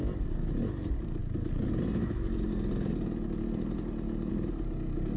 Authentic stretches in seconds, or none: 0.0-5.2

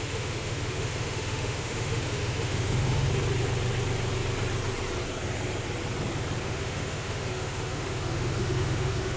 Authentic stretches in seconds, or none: 3.1-6.4

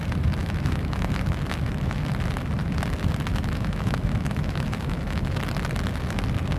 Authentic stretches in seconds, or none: 0.0-0.4; 2.1-3.3; 5.4-6.6

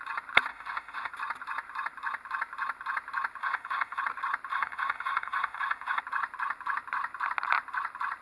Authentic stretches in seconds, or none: 0.0-0.5; 1.1-3.4; 4.0-4.5; 6.0-8.2

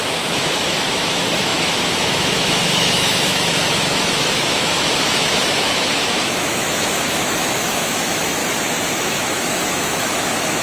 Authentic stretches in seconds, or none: 8.4-9.1

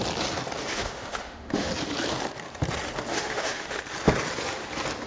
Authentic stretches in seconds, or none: 0.0-0.7; 1.7-3.1; 3.8-5.1

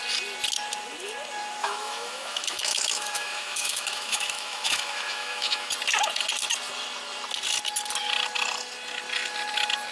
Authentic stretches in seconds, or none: 0.0-1.6; 5.7-9.9